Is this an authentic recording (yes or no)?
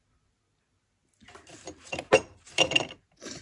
yes